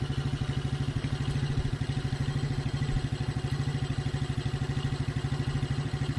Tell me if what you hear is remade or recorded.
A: recorded